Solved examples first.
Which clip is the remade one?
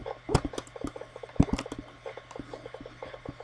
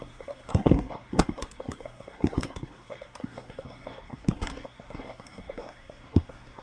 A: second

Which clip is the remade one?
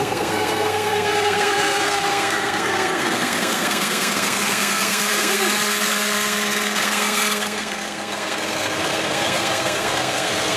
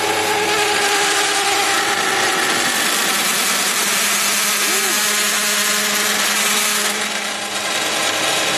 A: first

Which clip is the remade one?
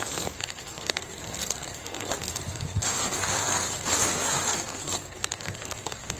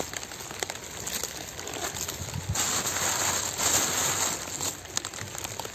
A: first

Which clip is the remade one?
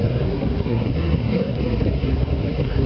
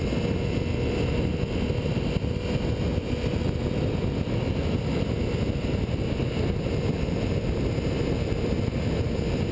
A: first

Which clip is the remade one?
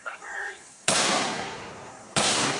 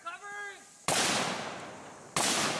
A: first